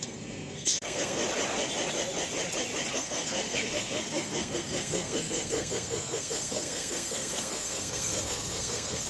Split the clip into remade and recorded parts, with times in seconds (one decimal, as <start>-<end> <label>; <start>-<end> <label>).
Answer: 0.0-1.2 remade; 1.2-2.9 recorded; 2.9-9.1 remade